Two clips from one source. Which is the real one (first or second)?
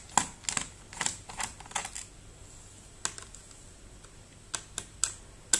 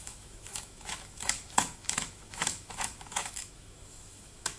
first